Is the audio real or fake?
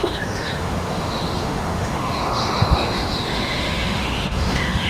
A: fake